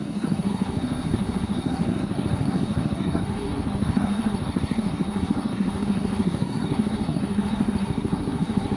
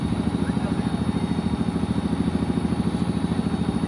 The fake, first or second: first